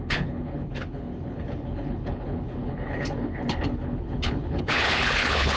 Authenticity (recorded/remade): remade